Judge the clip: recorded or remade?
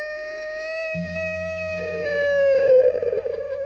remade